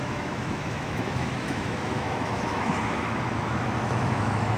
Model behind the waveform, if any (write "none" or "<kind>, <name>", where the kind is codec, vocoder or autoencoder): autoencoder, DAC-VAE